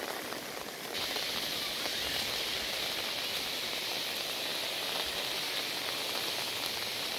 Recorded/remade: recorded